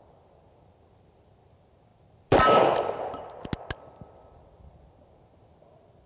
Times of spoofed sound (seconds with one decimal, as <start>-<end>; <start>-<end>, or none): none